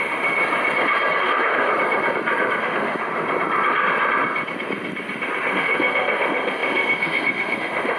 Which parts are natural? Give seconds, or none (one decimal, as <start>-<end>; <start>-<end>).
0.4-1.2; 1.7-2.6; 3.1-5.5